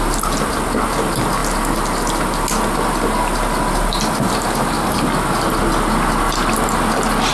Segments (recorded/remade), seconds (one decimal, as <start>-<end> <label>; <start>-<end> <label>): 0.0-7.3 recorded